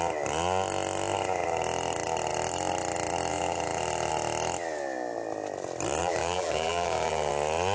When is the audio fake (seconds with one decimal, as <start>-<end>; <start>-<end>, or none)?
3.3-4.1; 6.0-7.3